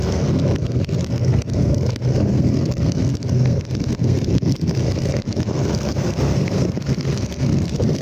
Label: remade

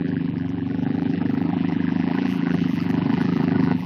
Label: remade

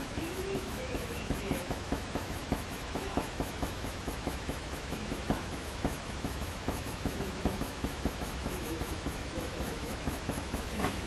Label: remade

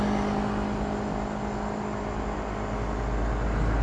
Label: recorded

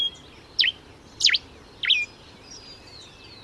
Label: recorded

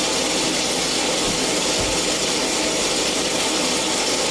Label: recorded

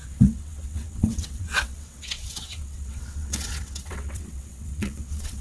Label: remade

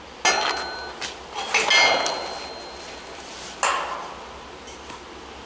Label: recorded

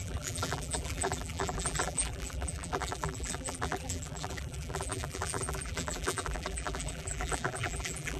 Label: remade